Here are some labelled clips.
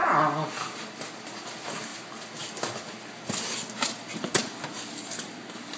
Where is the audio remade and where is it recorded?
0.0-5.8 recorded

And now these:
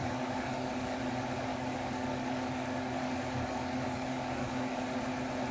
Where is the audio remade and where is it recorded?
0.0-1.0 remade; 1.0-1.5 recorded; 1.5-4.8 remade; 4.8-5.5 recorded

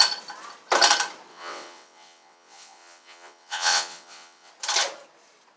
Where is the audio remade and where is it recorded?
0.0-1.3 recorded; 1.3-4.5 remade; 4.5-5.6 recorded

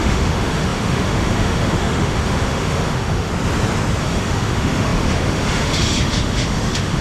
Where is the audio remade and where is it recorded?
0.0-3.3 remade; 3.3-4.0 recorded; 4.0-7.0 remade

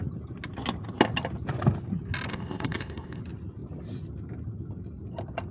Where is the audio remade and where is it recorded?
0.0-2.3 recorded; 2.3-3.2 remade; 3.2-5.5 recorded

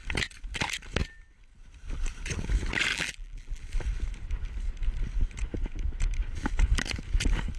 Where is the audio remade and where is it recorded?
0.0-2.9 recorded; 2.9-3.6 remade; 3.6-7.6 recorded

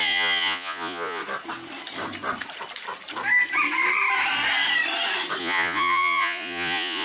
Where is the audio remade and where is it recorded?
0.0-1.2 remade; 1.2-5.4 recorded; 5.4-7.0 remade

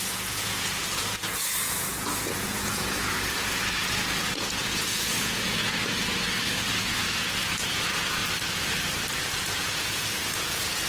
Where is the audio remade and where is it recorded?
0.0-5.6 remade; 5.6-6.8 recorded; 6.8-8.2 remade; 8.2-9.3 recorded; 9.3-10.9 remade